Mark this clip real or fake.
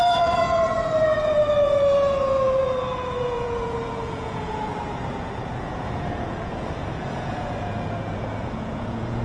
fake